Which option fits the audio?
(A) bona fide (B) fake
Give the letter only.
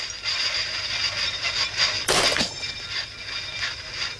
A